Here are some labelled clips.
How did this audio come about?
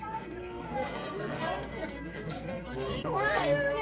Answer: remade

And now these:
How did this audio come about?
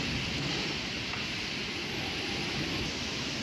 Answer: recorded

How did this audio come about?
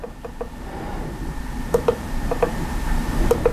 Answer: remade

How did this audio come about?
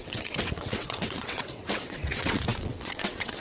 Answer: remade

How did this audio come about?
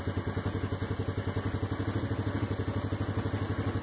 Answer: recorded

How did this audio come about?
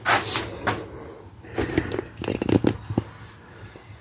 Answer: recorded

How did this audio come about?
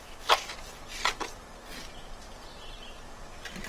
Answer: recorded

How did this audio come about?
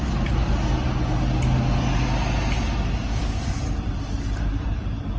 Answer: recorded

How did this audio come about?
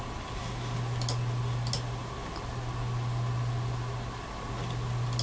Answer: recorded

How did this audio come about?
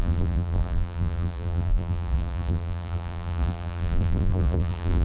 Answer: remade